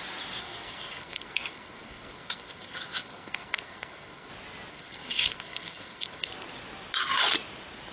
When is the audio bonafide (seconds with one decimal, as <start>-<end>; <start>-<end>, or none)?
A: 0.0-0.4; 4.3-4.7; 6.3-7.9